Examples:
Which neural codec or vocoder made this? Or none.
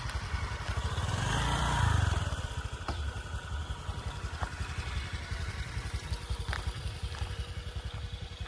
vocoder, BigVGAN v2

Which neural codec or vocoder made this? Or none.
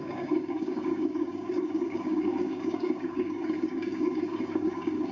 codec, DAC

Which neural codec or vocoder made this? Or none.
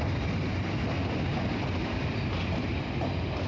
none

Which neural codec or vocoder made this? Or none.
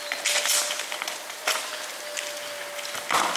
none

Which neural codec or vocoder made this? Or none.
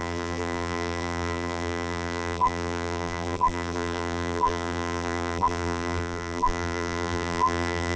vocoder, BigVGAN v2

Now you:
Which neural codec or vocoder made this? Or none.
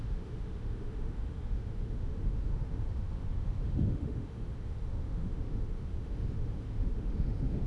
autoencoder, DAC-VAE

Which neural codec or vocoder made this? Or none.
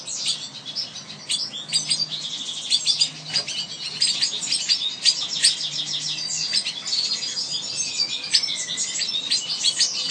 none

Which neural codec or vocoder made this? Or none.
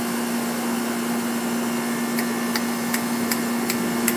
none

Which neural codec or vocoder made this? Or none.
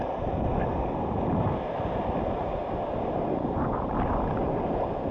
none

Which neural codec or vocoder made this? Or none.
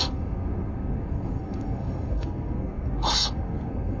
codec, SNAC